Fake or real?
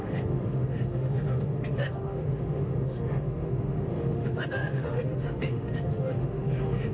fake